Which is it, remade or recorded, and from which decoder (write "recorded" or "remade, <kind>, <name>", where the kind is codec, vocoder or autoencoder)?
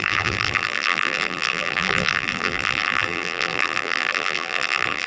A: remade, vocoder, BigVGAN v2